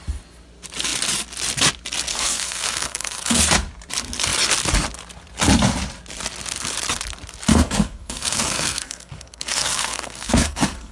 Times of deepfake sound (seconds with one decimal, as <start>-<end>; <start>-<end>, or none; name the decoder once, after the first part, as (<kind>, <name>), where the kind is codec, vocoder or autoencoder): 2.1-3.4 (codec, SNAC); 7.5-10.9